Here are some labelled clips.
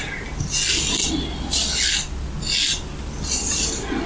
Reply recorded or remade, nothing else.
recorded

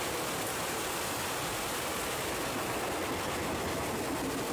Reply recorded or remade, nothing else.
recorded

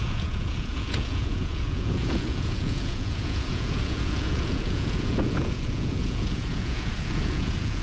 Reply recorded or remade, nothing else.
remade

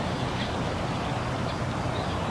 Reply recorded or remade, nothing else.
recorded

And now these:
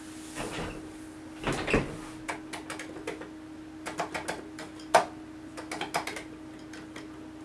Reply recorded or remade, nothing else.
recorded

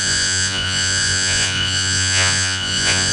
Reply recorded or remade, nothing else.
remade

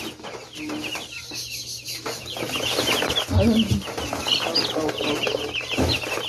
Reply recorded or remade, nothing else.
recorded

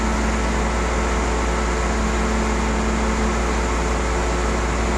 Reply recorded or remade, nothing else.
recorded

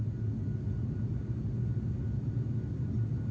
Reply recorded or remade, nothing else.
recorded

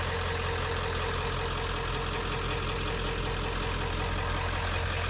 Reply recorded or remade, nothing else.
recorded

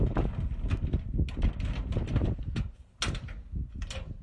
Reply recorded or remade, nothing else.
recorded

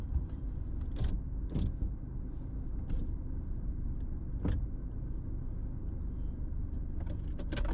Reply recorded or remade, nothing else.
recorded